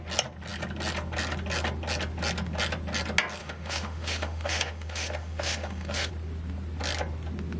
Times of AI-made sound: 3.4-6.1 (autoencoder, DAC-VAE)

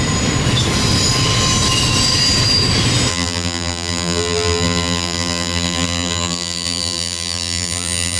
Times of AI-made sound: 3.1-8.2 (vocoder, BigVGAN v2)

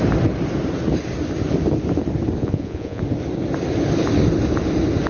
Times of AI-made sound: 2.4-3.0 (vocoder, Vocos)